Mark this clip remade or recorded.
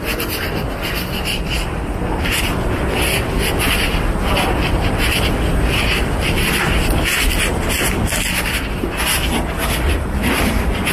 recorded